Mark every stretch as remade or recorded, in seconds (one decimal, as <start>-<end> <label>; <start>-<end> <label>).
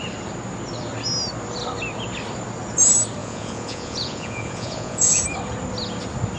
0.0-3.2 recorded; 3.2-5.2 remade; 5.2-6.4 recorded